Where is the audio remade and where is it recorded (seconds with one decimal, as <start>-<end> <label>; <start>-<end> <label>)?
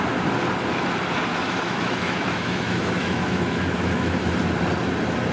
0.0-1.3 recorded; 1.3-4.3 remade; 4.3-5.3 recorded